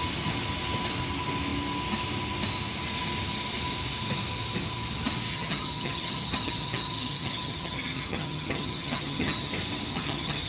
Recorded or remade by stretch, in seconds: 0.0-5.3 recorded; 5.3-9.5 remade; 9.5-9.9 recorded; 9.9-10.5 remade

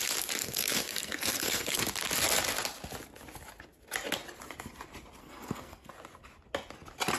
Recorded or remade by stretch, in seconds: 0.0-0.4 recorded; 0.4-1.8 remade; 1.8-5.2 recorded; 5.2-5.9 remade; 5.9-7.2 recorded

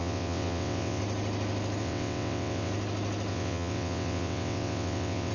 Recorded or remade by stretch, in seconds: 0.0-1.0 remade; 1.0-1.8 recorded; 1.8-2.7 remade; 2.7-3.3 recorded; 3.3-5.3 remade

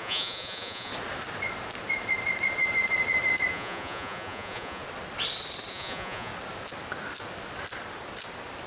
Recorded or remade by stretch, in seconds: 0.0-0.9 remade; 0.9-3.5 recorded; 3.5-4.8 remade; 4.8-5.7 recorded; 5.7-6.3 remade; 6.3-8.7 recorded